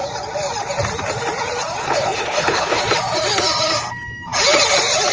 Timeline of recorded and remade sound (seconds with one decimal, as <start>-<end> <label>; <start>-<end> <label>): 0.0-1.8 recorded; 1.8-2.8 remade; 2.8-5.1 recorded